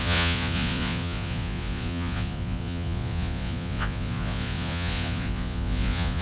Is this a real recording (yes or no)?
no